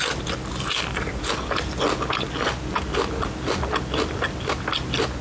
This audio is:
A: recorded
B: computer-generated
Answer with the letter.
A